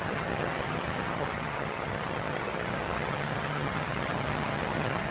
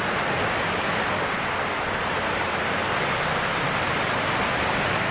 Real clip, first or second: second